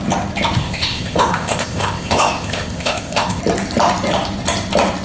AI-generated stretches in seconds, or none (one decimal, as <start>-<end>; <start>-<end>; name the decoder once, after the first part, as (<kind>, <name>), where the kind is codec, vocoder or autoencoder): 0.6-3.4 (codec, ZipCodec)